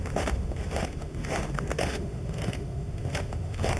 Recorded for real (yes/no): no